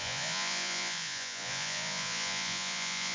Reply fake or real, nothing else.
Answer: fake